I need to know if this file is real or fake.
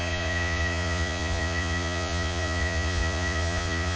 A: fake